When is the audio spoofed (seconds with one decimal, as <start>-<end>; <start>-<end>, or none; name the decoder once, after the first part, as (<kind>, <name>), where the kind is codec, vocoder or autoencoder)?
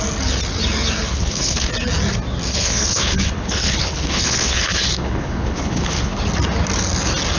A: 1.1-1.7 (codec, HILCodec); 2.5-6.2